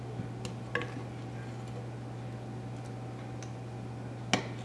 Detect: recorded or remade recorded